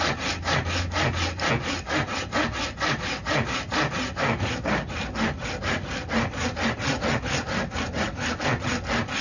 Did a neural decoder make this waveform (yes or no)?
no